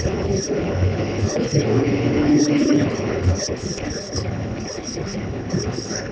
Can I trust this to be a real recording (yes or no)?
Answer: no